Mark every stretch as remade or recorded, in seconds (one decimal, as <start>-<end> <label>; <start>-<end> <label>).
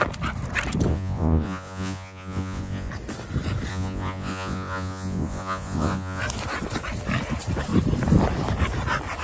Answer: 0.0-0.9 recorded; 0.9-2.9 remade; 2.9-3.7 recorded; 3.7-6.2 remade; 6.2-9.2 recorded